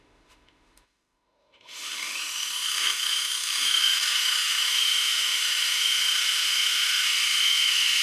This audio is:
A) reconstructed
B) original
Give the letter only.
A